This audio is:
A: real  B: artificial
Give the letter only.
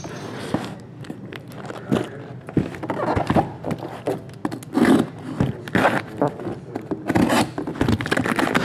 A